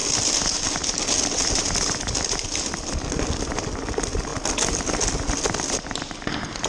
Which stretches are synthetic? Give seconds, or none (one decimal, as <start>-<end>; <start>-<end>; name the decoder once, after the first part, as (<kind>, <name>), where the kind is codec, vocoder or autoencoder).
none